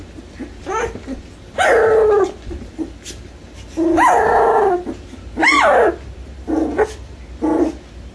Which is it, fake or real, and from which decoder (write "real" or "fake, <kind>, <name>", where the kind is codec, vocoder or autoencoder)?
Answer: real